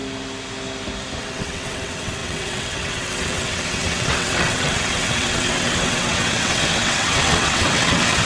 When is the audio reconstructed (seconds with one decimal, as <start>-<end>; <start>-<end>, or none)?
1.2-8.3